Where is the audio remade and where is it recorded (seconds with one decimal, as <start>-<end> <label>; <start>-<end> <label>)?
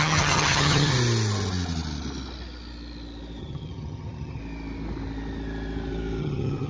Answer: 0.0-0.9 remade; 0.9-3.4 recorded; 3.4-4.4 remade; 4.4-6.2 recorded; 6.2-6.7 remade